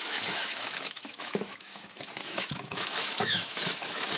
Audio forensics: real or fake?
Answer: fake